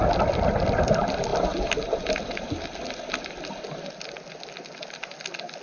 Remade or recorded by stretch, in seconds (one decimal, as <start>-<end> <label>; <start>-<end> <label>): 0.0-5.6 recorded